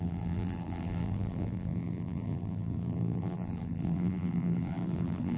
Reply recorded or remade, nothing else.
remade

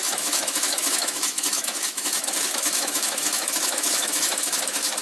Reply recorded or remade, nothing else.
remade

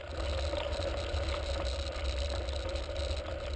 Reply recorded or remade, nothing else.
recorded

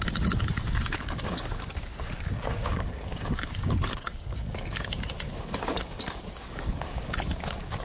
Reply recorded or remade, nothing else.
remade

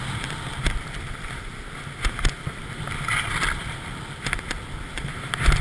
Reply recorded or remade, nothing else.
recorded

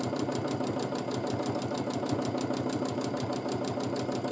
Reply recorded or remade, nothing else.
recorded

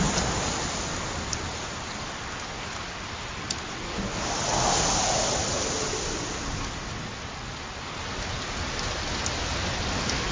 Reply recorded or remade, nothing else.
recorded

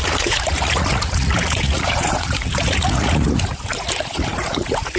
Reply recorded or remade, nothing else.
remade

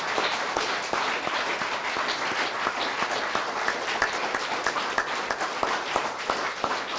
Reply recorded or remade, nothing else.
recorded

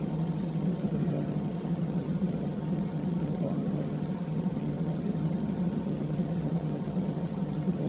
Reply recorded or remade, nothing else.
remade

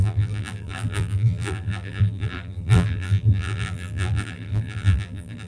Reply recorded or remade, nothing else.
remade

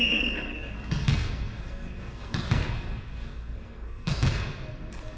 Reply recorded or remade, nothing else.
remade